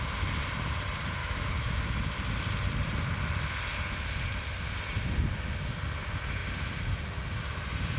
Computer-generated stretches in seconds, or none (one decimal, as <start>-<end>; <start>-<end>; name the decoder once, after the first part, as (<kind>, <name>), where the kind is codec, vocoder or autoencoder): 1.2-1.9 (autoencoder, DAC-VAE)